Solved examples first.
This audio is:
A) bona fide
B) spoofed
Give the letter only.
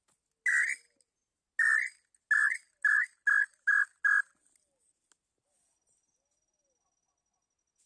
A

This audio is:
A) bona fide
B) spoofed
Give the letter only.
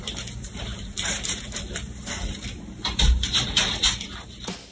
B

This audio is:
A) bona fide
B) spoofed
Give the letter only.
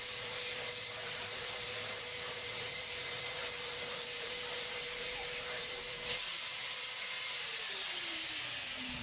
B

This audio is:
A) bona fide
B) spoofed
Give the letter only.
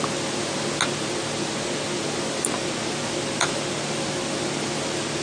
A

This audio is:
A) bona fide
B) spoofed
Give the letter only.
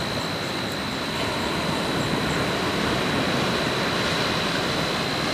B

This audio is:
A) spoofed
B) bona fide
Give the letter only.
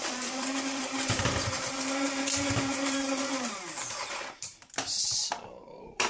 A